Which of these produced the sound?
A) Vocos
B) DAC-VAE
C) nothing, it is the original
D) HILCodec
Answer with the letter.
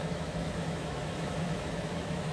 B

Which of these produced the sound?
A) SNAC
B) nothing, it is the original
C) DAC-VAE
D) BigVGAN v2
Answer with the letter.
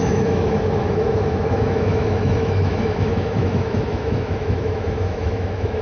C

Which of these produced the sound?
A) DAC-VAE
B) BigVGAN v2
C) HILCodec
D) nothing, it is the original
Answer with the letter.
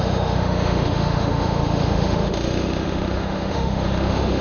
A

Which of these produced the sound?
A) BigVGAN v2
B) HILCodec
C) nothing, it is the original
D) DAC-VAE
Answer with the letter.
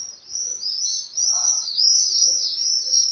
C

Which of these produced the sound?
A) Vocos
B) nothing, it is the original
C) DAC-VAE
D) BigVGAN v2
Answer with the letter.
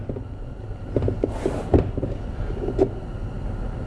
B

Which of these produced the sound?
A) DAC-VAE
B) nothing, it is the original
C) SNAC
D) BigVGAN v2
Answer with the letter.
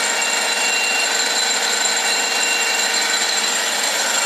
B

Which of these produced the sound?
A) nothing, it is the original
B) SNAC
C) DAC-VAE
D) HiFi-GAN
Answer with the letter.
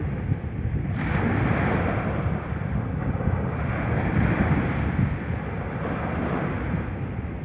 A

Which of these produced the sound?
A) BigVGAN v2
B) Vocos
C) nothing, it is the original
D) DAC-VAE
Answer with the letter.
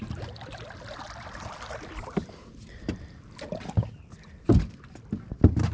C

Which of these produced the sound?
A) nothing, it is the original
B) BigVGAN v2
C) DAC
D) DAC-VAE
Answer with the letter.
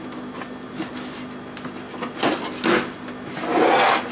A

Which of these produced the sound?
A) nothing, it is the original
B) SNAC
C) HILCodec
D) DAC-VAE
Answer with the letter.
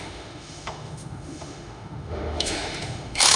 D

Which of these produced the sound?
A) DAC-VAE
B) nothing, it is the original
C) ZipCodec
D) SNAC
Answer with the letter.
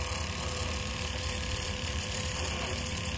B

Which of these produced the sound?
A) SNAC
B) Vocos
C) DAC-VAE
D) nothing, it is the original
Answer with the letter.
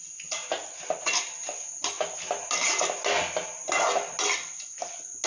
D